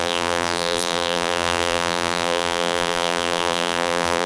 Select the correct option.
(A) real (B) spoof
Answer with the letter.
B